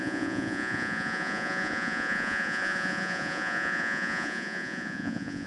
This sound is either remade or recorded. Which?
remade